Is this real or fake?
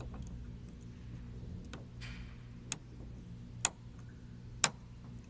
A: real